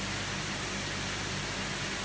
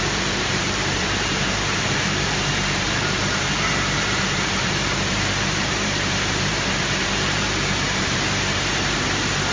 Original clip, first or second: first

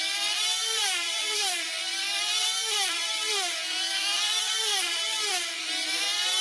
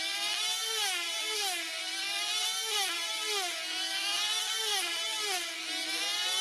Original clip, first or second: second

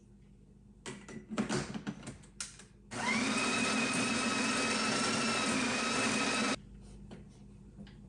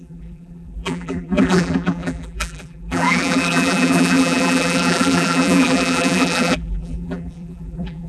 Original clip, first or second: first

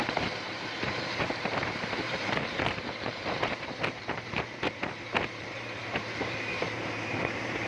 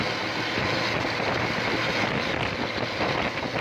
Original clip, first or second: second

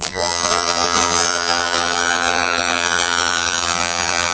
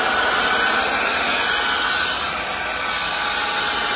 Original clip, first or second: second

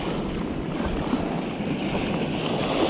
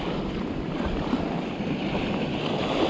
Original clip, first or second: first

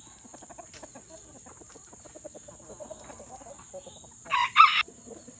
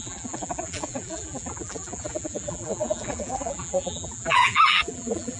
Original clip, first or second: first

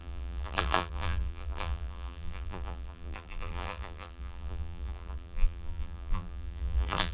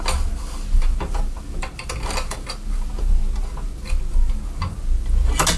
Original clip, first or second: second